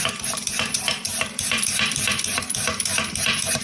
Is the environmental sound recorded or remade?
remade